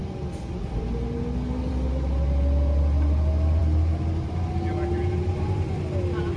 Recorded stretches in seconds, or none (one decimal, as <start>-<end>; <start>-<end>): 0.0-6.4